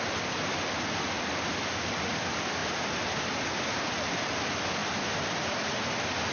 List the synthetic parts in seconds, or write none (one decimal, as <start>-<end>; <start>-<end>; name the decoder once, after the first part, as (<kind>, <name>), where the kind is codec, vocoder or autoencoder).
0.0-6.3 (vocoder, BigVGAN v2)